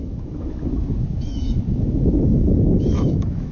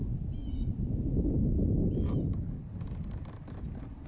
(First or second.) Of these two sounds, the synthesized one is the first